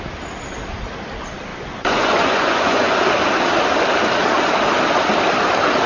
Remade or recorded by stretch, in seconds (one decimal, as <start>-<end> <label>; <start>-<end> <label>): 0.0-1.5 recorded; 1.5-3.0 remade; 3.0-5.9 recorded